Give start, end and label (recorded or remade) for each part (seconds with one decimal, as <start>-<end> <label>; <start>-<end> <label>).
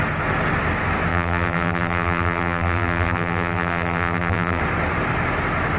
0.0-1.1 recorded; 1.1-4.6 remade; 4.6-5.8 recorded